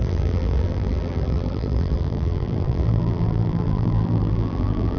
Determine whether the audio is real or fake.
fake